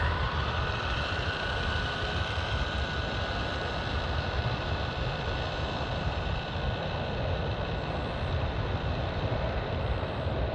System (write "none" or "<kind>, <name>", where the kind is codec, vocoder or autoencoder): none